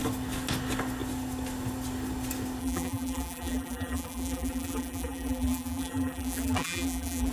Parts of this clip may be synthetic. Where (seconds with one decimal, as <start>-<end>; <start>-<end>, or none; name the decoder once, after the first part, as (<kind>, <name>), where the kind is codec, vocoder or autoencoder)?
2.6-7.3 (vocoder, BigVGAN v2)